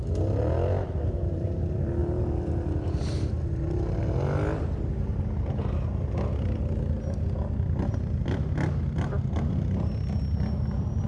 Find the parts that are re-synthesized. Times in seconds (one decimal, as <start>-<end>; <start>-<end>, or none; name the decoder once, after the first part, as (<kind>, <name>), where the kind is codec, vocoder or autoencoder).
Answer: none